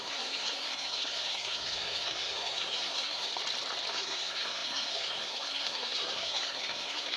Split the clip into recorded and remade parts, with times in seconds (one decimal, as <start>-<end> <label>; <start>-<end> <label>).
0.0-3.3 remade; 3.3-3.9 recorded; 3.9-7.2 remade